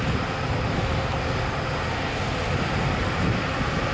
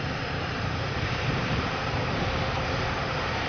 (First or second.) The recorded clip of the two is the first